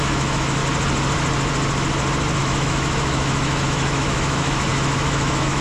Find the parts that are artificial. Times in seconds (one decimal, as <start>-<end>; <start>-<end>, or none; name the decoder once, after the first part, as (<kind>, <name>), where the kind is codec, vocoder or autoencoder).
0.0-0.6 (autoencoder, DAC-VAE); 2.4-5.6